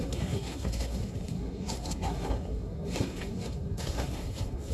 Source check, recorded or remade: remade